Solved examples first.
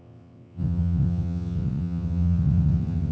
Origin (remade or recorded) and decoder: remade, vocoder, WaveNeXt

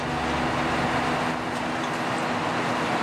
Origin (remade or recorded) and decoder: recorded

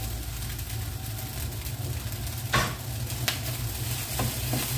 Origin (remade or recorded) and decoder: recorded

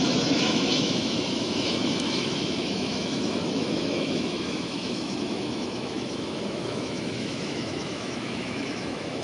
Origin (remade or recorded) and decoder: remade, autoencoder, DAC-VAE